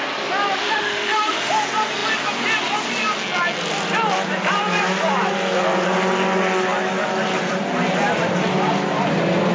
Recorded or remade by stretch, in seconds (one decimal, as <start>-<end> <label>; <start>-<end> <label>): 0.0-0.6 recorded; 0.6-1.5 remade; 1.5-9.5 recorded